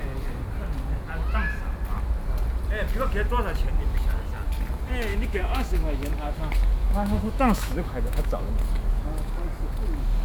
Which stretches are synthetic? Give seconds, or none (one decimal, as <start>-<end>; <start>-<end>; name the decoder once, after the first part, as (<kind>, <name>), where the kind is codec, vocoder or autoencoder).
5.1-6.1 (autoencoder, DAC-VAE); 6.8-8.5